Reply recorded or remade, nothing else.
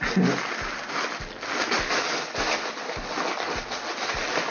recorded